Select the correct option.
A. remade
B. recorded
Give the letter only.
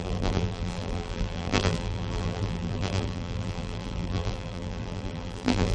A